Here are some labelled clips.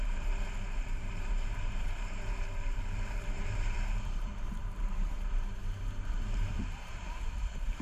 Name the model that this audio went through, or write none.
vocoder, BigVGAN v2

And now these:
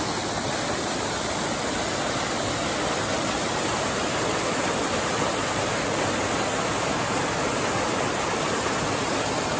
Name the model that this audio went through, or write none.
none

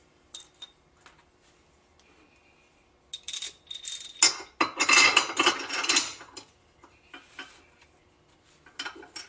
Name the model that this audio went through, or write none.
none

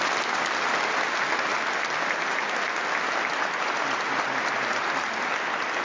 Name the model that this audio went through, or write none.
none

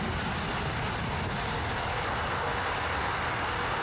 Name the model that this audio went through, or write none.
none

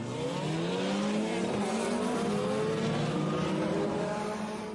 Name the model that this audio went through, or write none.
none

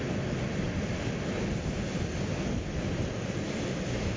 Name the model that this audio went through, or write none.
none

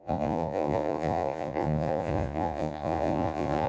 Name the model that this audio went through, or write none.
vocoder, Vocos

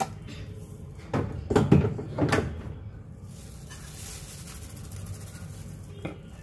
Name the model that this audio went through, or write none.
none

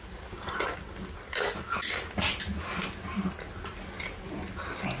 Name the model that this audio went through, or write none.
none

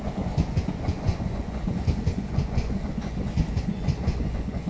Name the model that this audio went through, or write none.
vocoder, Vocos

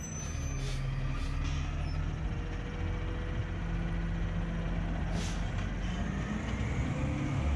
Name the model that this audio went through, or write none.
none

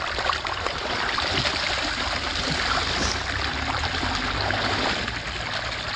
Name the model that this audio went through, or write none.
none